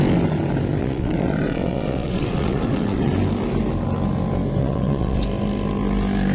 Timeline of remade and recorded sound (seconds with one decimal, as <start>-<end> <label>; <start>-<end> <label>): 0.0-0.8 recorded; 0.8-3.1 remade; 3.1-4.6 recorded; 4.6-5.2 remade; 5.2-6.3 recorded